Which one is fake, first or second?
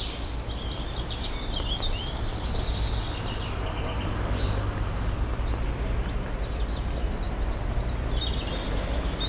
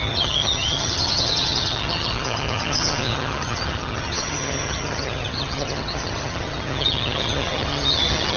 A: second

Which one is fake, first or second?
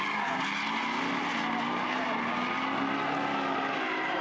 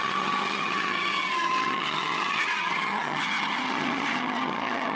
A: second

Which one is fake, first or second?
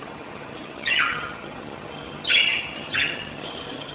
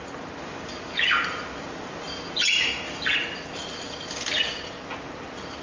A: first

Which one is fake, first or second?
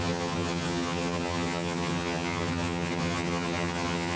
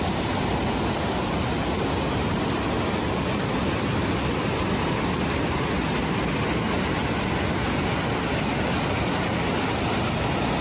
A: first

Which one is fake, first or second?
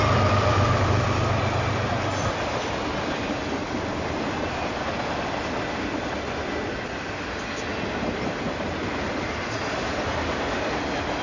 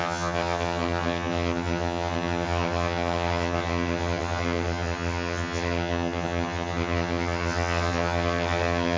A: second